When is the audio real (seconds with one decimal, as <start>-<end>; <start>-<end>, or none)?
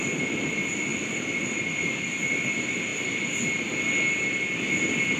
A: 0.0-5.2